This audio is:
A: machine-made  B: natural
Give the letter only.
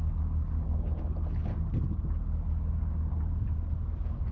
B